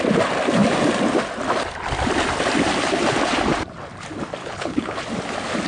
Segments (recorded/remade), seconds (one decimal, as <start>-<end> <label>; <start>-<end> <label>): 0.0-4.4 recorded; 4.4-5.0 remade; 5.0-5.7 recorded